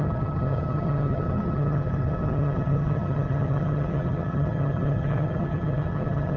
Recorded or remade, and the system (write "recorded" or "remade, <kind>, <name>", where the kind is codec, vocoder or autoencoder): remade, vocoder, HiFi-GAN